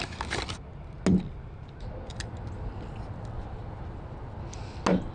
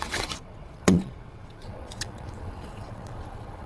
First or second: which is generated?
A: second